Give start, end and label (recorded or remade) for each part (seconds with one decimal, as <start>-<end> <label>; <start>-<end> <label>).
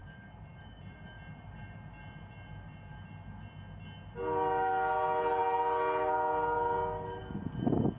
0.0-8.0 recorded